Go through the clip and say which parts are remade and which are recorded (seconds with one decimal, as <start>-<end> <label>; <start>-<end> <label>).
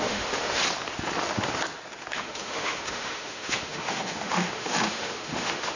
0.0-0.6 remade; 0.6-2.1 recorded; 2.1-5.8 remade